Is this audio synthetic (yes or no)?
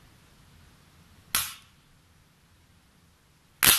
no